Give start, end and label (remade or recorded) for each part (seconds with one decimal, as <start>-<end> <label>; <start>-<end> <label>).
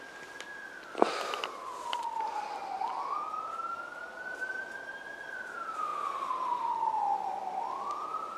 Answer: 0.0-8.4 recorded